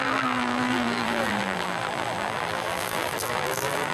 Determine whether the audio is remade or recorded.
remade